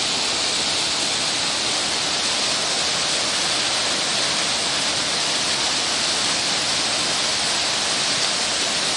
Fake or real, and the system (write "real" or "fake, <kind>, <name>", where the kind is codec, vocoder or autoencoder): real